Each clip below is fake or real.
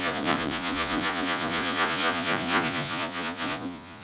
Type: fake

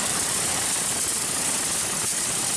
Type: fake